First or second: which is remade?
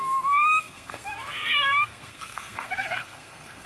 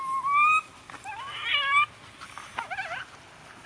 first